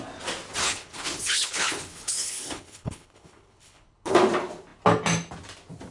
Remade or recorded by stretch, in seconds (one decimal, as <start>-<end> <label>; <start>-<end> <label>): 0.0-0.6 recorded; 0.6-4.1 remade; 4.1-5.9 recorded